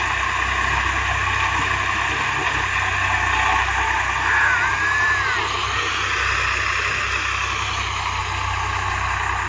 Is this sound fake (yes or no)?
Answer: no